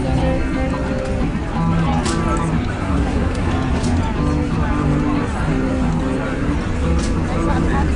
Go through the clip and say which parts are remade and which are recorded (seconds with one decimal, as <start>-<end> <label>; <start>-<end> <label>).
0.0-2.8 recorded; 2.8-3.5 remade; 3.5-8.0 recorded